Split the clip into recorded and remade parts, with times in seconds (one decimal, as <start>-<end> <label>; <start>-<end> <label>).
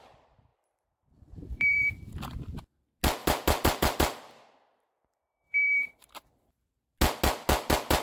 0.0-0.5 recorded; 0.5-2.6 remade; 2.6-3.2 recorded; 3.2-6.7 remade; 6.7-8.0 recorded